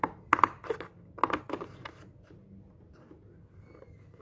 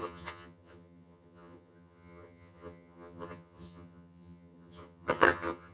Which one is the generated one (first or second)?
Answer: second